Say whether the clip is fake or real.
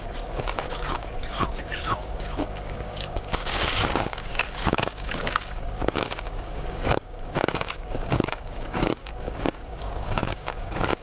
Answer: fake